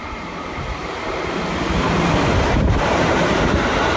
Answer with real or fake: fake